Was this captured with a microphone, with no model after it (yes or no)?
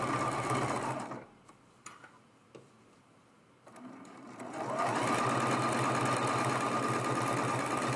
yes